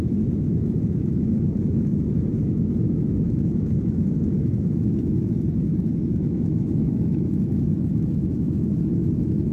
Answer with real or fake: fake